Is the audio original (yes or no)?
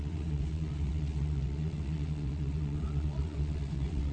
no